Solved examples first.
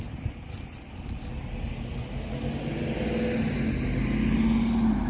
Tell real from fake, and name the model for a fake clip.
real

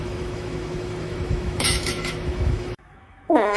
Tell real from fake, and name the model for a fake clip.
fake, autoencoder, DAC-VAE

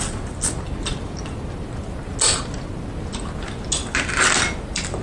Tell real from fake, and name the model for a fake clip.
real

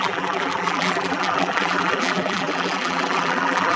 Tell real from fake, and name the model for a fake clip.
fake, vocoder, BigVGAN v2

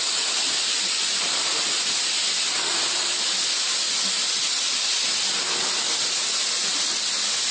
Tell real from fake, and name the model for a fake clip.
real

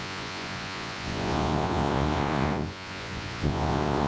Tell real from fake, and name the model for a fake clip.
fake, vocoder, Vocos